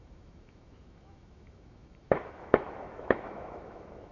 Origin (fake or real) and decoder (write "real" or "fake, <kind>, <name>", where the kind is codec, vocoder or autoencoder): fake, autoencoder, DAC-VAE